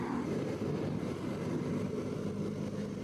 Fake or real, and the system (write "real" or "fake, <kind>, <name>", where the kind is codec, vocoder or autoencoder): real